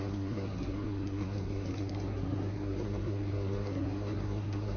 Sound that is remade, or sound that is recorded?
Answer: remade